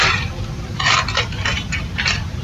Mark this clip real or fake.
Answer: fake